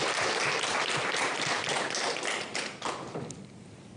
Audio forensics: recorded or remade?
recorded